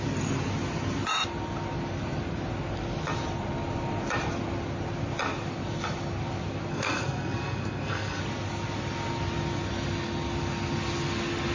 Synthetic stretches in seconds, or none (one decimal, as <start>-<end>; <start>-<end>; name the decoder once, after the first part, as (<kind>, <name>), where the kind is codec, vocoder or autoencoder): 6.7-8.2 (codec, SNAC)